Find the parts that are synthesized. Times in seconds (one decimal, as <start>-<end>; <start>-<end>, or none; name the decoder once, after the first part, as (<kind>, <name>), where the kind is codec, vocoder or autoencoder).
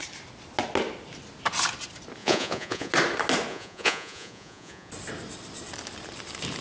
2.2-2.9 (vocoder, Vocos); 3.5-4.9